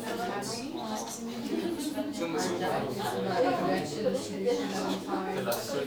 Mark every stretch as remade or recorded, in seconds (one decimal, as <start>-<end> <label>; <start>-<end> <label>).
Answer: 0.0-2.3 recorded; 2.3-5.9 remade